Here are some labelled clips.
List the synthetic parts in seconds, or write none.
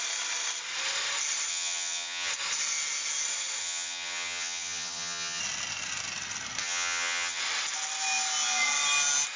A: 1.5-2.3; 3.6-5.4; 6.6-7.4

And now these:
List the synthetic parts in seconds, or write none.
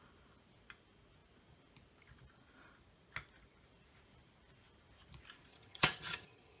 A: 5.5-6.6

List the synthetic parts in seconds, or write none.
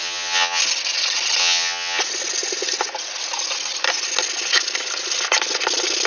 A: 0.0-0.6; 1.4-2.0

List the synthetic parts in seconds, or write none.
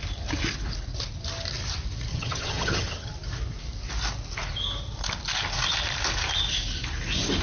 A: 2.1-3.1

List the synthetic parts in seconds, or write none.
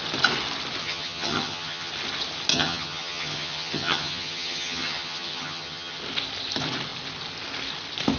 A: 0.8-1.9; 2.5-6.0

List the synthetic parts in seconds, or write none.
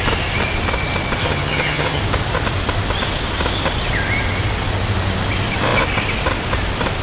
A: 1.2-2.0